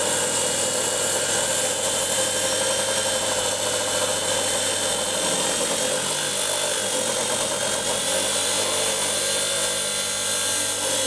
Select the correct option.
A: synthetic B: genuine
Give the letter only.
B